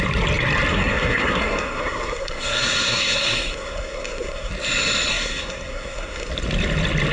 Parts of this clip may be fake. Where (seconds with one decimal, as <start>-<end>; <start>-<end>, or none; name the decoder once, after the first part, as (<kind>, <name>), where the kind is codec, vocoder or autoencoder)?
0.7-4.5 (codec, SNAC); 5.1-6.3